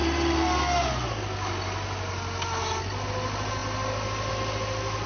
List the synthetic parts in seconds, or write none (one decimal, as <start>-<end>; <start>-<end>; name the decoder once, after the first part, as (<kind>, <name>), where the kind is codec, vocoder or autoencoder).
none